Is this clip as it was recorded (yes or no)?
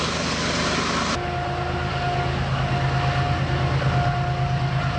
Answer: yes